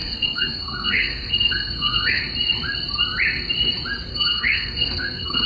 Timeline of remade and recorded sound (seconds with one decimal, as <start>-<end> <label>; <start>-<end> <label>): 0.0-2.2 remade; 2.2-4.1 recorded; 4.1-5.5 remade